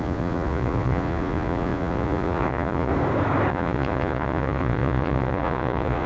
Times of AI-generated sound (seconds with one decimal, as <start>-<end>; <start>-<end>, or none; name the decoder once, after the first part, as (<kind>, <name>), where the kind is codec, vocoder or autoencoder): 0.0-2.9 (vocoder, Vocos); 3.5-6.1